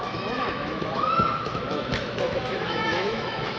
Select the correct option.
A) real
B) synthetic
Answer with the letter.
B